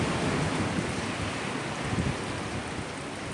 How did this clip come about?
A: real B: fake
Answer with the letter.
A